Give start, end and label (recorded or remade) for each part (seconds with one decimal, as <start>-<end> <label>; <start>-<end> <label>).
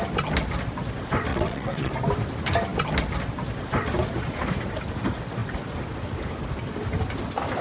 0.0-1.3 recorded; 1.3-1.9 remade; 1.9-7.6 recorded